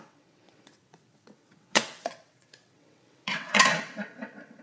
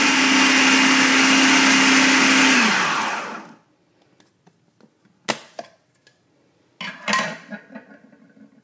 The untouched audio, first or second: second